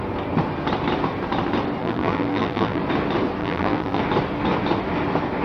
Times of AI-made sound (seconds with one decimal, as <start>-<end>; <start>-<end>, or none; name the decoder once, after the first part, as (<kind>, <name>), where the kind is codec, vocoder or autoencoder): 1.8-2.8 (vocoder, BigVGAN v2); 3.4-4.0